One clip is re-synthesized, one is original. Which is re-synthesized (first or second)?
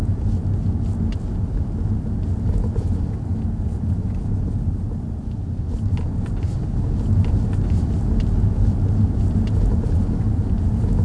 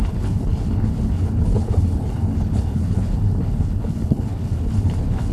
second